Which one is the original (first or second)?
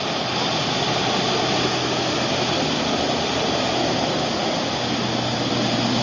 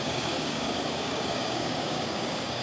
first